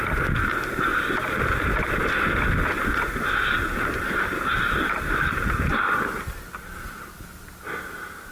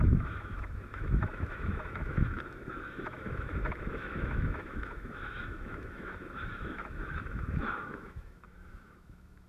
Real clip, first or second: first